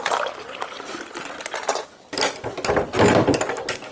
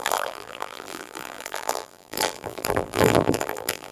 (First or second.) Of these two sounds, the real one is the first